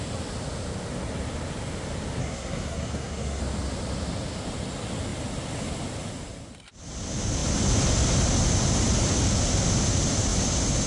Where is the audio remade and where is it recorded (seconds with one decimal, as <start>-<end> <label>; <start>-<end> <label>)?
0.0-2.2 recorded; 2.2-3.4 remade; 3.4-10.9 recorded